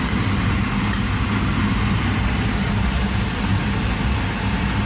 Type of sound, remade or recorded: recorded